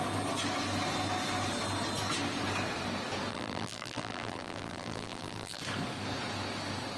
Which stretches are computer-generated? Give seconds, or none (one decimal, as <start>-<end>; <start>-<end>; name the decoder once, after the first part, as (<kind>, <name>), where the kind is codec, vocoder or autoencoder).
3.3-5.6 (vocoder, BigVGAN v2)